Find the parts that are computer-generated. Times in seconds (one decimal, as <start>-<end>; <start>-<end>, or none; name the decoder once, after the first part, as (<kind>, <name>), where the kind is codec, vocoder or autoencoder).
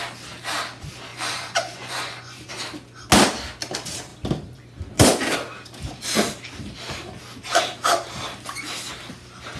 1.1-2.6 (vocoder, Vocos)